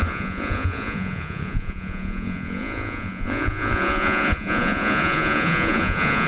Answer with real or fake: fake